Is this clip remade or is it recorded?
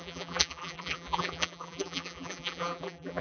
remade